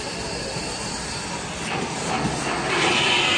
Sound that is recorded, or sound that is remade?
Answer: recorded